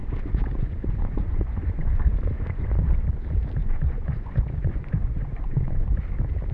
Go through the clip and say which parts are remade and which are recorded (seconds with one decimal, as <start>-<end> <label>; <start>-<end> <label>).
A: 0.0-2.7 remade; 2.7-3.6 recorded; 3.6-6.0 remade; 6.0-6.5 recorded

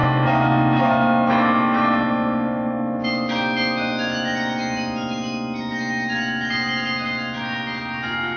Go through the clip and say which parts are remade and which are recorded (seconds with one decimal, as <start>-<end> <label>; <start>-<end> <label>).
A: 0.0-8.4 recorded

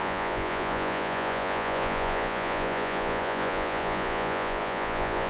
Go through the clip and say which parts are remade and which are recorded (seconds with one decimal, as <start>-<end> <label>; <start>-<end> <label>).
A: 0.0-5.3 remade

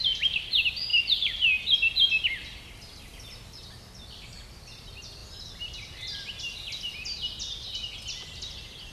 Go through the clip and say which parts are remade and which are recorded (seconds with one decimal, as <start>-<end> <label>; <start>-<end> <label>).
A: 0.0-8.9 recorded